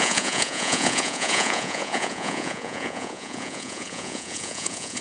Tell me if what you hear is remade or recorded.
remade